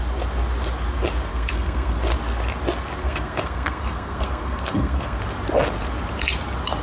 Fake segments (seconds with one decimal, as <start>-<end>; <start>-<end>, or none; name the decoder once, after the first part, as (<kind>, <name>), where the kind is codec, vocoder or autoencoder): 1.3-2.0 (codec, SNAC); 3.0-5.2